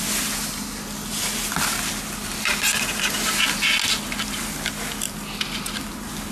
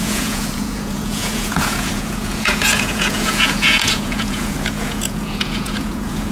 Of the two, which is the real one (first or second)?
first